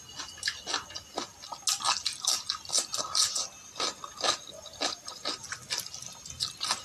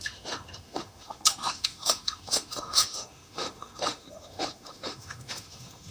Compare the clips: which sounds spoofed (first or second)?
second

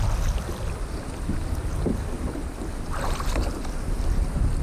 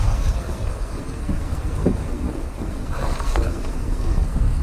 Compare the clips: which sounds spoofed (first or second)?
second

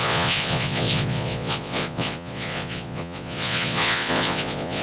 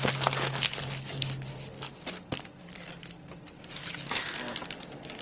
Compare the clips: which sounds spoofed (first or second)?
first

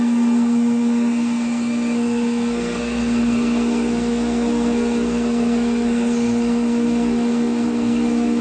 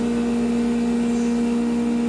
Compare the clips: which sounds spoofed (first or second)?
first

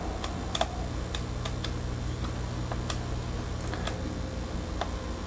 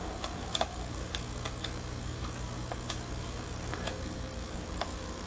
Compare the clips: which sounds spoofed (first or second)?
second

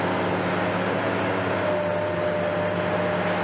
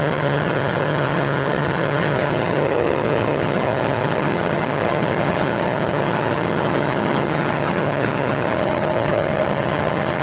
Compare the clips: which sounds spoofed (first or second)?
second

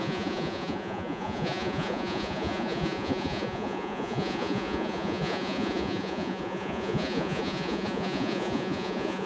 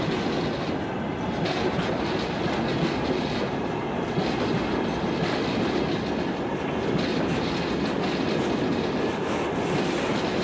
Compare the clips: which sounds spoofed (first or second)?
first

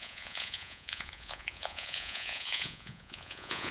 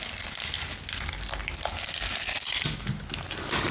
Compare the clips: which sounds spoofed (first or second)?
first